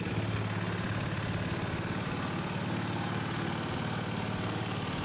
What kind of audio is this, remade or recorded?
recorded